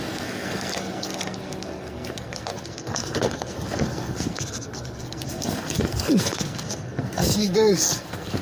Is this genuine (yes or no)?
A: no